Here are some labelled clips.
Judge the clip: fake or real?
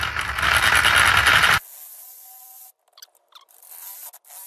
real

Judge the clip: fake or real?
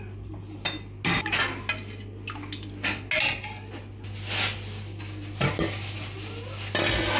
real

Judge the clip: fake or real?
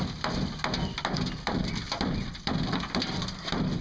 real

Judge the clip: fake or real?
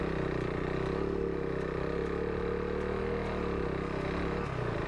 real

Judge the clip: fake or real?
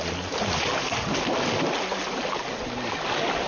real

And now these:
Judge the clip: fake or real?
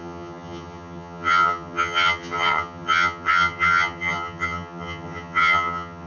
fake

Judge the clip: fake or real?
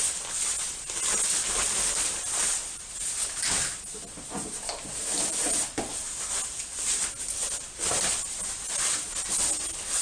real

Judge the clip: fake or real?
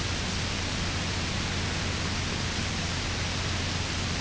real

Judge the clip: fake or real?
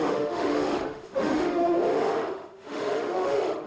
fake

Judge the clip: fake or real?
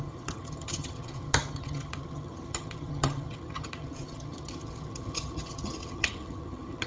fake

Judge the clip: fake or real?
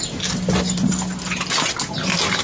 real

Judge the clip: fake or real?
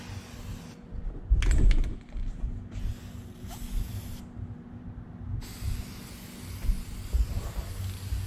real